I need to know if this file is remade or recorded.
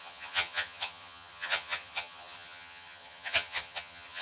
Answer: remade